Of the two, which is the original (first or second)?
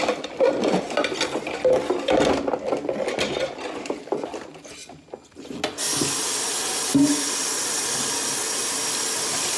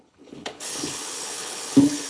first